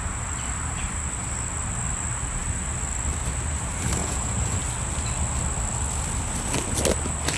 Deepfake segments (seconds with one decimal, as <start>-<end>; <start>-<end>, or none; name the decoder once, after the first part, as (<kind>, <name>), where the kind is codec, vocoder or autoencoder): 4.0-4.6 (vocoder, Vocos)